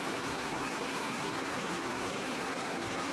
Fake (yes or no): yes